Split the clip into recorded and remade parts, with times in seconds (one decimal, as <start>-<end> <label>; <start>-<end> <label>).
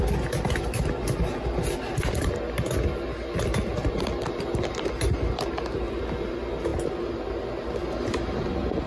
0.0-8.9 recorded